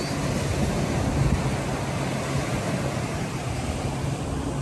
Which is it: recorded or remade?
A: recorded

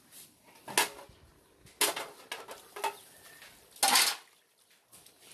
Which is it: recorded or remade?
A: recorded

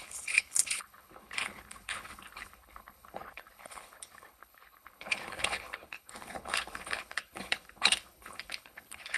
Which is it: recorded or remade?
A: remade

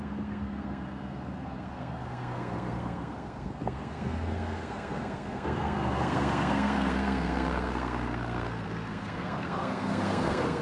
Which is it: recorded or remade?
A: remade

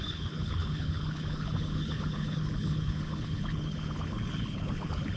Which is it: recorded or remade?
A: remade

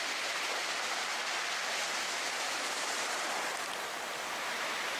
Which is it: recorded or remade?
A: recorded